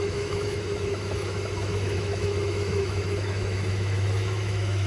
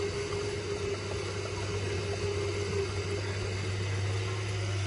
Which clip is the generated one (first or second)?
first